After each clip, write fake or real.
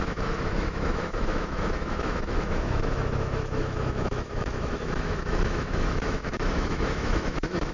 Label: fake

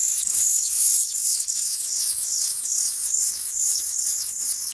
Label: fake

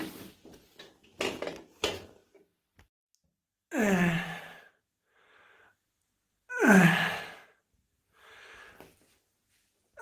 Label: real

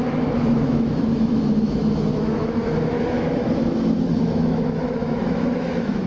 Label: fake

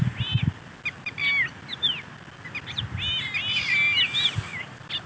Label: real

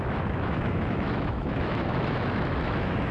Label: fake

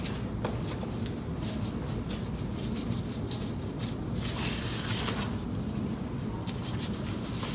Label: real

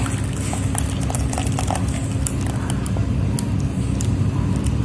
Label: real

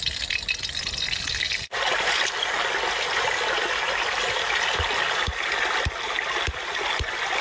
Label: real